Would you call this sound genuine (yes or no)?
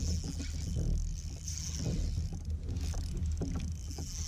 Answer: yes